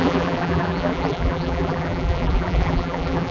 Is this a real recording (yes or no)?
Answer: no